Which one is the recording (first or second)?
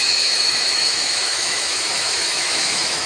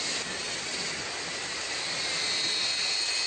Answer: second